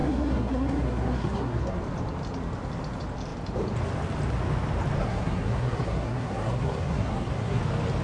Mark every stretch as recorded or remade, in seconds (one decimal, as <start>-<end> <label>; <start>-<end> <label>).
0.0-1.8 remade; 1.8-5.0 recorded; 5.0-7.6 remade; 7.6-8.0 recorded

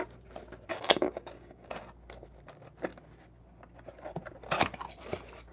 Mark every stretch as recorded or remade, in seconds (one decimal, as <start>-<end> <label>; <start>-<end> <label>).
0.0-0.7 recorded; 0.7-1.8 remade; 1.8-5.5 recorded

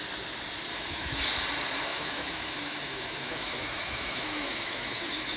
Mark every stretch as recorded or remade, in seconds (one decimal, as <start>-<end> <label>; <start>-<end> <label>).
0.0-0.7 recorded; 0.7-1.2 remade; 1.2-1.9 recorded; 1.9-5.4 remade

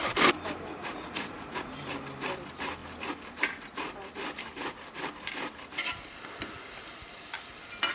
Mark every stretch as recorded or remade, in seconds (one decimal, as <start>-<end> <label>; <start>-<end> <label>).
0.0-0.7 recorded; 0.7-1.7 remade; 1.7-7.9 recorded

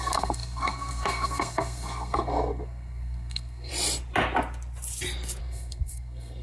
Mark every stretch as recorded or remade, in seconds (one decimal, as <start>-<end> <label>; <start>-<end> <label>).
0.0-3.7 remade; 3.7-5.4 recorded; 5.4-6.4 remade

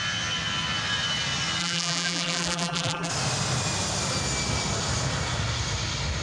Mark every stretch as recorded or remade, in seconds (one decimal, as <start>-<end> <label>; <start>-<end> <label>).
0.0-1.6 recorded; 1.6-3.1 remade; 3.1-6.2 recorded

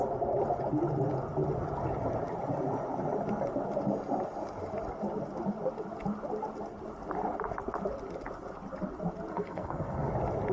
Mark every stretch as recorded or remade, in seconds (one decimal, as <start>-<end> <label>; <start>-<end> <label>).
0.0-9.3 recorded; 9.3-10.1 remade; 10.1-10.5 recorded